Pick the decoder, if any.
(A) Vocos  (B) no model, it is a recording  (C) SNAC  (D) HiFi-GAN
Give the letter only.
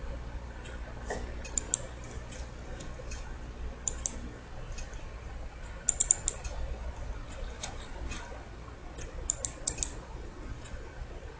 B